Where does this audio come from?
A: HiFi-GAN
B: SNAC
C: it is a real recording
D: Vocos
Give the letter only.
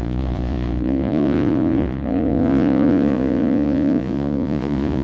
D